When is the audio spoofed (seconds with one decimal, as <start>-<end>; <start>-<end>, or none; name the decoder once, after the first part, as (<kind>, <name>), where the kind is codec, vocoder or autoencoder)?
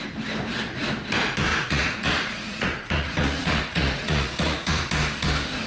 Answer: 1.5-4.9 (vocoder, Vocos)